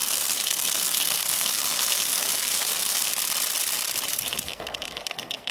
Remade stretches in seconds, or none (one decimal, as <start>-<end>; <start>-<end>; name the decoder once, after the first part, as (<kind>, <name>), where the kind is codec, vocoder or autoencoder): 0.0-3.1 (codec, SNAC); 4.1-5.5